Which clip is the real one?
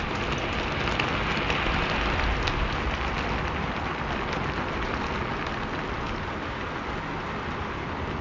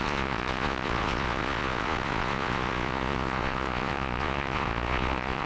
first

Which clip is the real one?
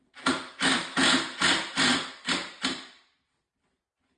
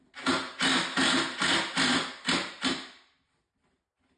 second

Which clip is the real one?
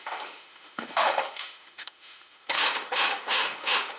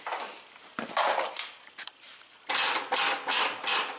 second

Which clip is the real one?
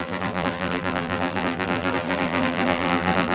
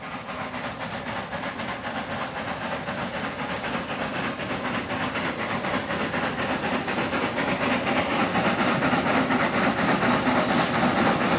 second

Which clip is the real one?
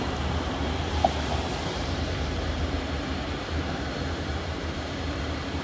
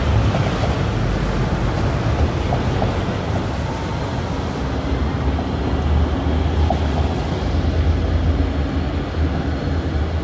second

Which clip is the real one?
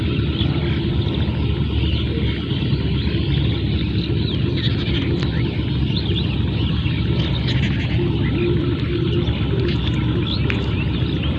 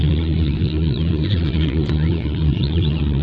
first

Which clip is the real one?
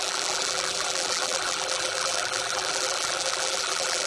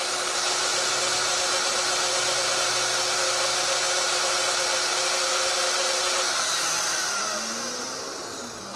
second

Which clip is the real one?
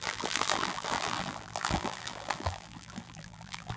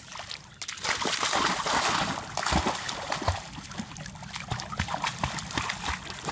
second